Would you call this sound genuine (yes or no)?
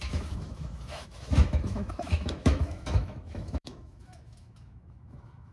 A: no